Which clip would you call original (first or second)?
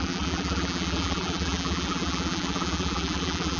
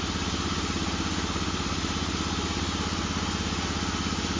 second